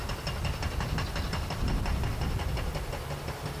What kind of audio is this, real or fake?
real